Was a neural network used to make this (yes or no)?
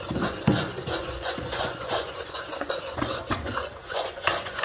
yes